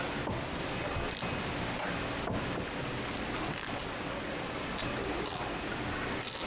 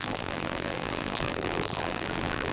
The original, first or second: first